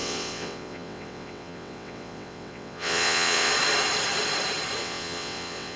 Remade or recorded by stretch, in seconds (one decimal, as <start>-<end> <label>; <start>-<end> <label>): 0.0-3.5 remade; 3.5-4.8 recorded; 4.8-5.8 remade